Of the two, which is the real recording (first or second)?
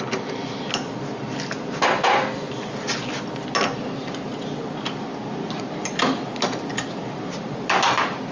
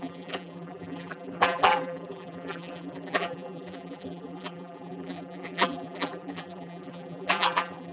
first